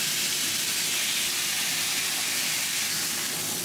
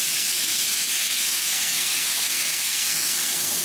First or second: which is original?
first